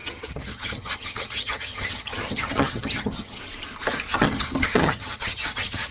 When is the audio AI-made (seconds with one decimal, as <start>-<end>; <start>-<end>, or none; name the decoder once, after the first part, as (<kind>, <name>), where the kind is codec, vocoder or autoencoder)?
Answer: 0.0-3.4 (vocoder, HiFi-GAN); 4.1-5.9